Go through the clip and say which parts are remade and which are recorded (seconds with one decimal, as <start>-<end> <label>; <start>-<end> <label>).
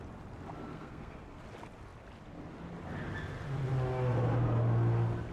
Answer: 0.0-0.7 recorded; 0.7-1.4 remade; 1.4-5.3 recorded